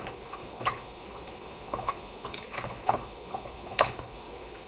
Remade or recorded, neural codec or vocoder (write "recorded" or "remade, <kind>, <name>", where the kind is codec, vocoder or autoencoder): remade, codec, HILCodec